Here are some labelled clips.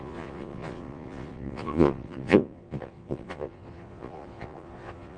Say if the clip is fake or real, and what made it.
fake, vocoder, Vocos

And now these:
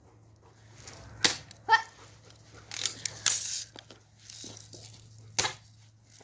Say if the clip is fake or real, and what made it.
real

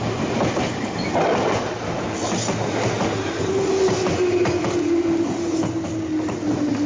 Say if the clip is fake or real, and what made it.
real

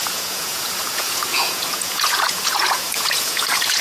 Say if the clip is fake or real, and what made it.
fake, vocoder, Vocos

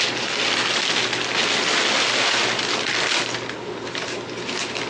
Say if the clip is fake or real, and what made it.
real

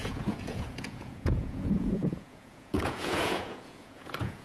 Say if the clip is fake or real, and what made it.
fake, vocoder, Vocos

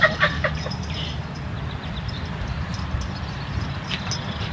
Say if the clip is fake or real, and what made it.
real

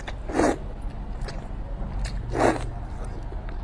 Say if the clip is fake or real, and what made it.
real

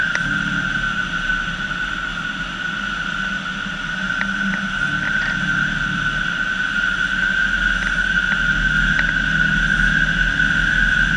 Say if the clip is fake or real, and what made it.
real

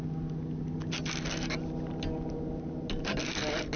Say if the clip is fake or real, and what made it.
real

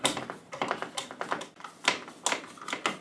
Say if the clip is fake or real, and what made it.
real